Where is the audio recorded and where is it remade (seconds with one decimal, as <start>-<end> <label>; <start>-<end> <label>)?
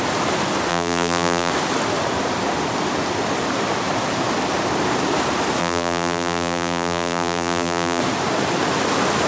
0.0-0.7 recorded; 0.7-1.5 remade; 1.5-5.6 recorded; 5.6-8.0 remade; 8.0-9.3 recorded